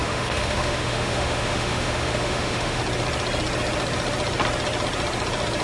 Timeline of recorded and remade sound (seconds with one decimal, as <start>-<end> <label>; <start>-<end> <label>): 0.0-2.8 remade; 2.8-5.6 recorded